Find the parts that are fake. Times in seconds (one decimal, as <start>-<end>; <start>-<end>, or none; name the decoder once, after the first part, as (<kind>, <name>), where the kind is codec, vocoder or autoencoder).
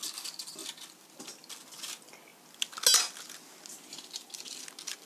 none